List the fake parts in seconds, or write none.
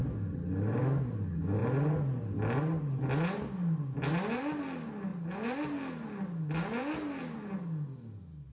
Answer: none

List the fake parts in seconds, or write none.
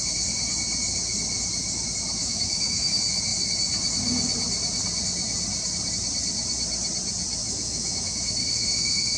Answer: 2.2-2.9 (autoencoder, DAC-VAE); 7.4-9.2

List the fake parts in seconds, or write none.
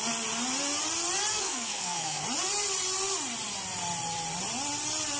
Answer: 1.3-2.2 (codec, SNAC)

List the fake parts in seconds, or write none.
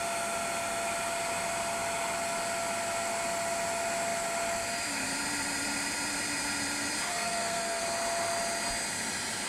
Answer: 7.1-7.8 (codec, SNAC)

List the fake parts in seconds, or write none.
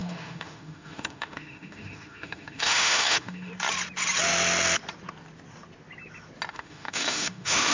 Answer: 0.0-3.5 (autoencoder, DAC-VAE); 6.5-7.7